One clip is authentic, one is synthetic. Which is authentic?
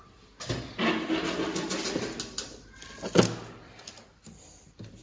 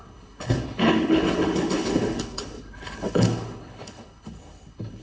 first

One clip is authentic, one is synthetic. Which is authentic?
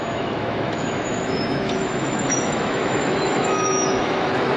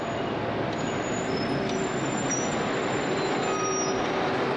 second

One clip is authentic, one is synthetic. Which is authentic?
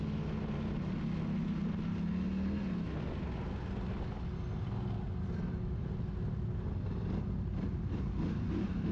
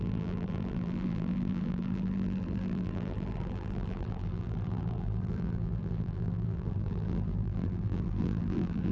first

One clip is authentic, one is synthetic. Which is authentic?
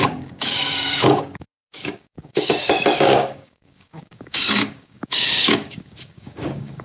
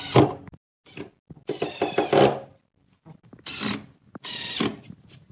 second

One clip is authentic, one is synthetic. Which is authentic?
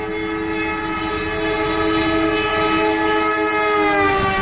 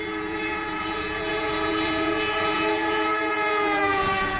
first